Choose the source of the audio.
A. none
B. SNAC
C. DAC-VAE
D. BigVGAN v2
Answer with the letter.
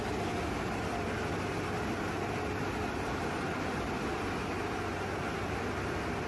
A